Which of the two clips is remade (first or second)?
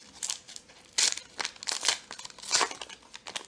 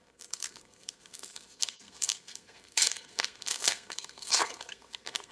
second